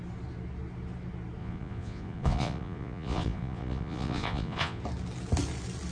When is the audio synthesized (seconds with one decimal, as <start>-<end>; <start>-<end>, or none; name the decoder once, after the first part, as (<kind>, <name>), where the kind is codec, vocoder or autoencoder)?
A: 1.4-4.8 (vocoder, Vocos)